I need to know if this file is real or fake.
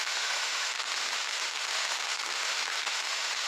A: fake